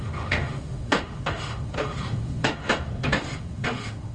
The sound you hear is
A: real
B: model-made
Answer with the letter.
B